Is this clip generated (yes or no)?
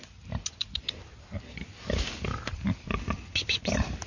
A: no